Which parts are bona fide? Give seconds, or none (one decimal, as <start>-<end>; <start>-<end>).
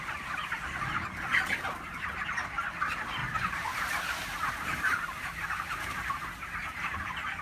0.0-3.2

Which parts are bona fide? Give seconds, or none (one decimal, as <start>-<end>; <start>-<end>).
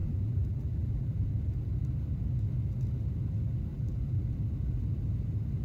1.3-3.7; 4.2-5.6